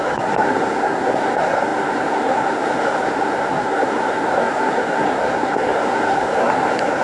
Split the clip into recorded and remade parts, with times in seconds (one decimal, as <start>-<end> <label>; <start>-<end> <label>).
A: 0.0-7.0 remade